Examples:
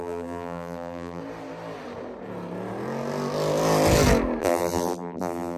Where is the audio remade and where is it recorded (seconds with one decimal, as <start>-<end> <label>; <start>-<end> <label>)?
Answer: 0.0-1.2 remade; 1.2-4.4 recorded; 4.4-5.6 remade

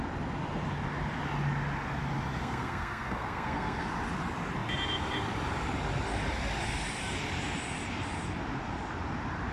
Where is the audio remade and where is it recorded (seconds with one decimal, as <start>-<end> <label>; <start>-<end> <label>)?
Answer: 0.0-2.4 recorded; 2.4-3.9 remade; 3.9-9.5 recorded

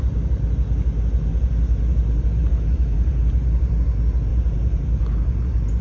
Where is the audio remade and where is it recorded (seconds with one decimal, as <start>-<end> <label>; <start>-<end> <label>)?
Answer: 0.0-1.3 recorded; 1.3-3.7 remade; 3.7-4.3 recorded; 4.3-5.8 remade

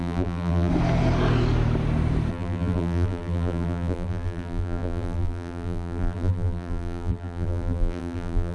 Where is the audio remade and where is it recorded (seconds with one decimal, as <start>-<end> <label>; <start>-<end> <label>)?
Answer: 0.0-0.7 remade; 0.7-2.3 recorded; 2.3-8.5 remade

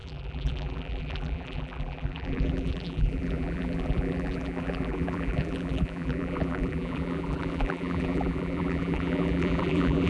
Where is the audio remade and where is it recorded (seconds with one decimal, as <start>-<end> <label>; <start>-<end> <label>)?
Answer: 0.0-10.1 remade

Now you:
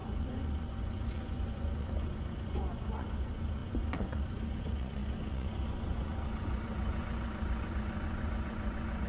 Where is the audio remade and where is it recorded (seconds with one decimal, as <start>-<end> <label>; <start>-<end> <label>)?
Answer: 0.0-9.1 remade

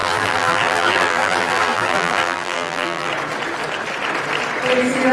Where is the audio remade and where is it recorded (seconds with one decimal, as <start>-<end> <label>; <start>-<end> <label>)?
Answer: 0.0-3.1 remade; 3.1-5.1 recorded

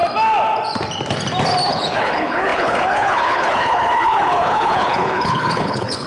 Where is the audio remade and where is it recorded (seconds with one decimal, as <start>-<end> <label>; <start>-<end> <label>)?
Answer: 0.0-1.7 recorded; 1.7-6.1 remade